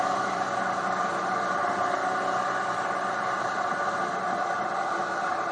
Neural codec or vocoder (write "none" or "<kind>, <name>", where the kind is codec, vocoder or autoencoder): none